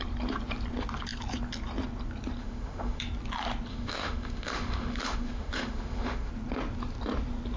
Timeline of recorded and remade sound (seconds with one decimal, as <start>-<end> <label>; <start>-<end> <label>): 0.0-2.4 recorded; 2.4-3.0 remade; 3.0-3.7 recorded; 3.7-6.3 remade; 6.3-7.6 recorded